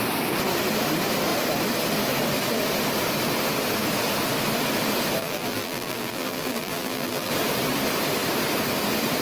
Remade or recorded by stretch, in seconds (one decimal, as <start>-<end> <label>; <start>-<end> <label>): 0.0-5.2 recorded; 5.2-7.3 remade; 7.3-9.2 recorded